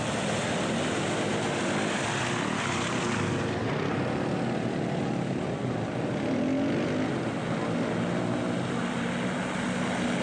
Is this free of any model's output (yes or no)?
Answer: yes